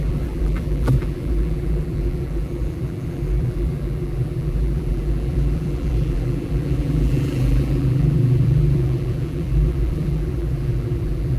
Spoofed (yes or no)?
yes